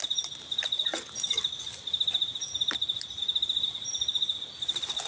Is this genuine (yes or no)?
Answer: yes